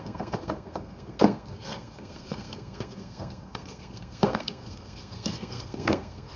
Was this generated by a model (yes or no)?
yes